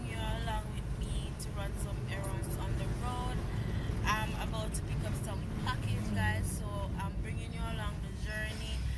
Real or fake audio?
real